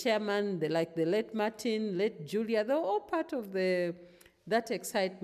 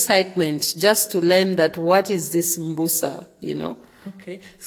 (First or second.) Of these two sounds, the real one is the first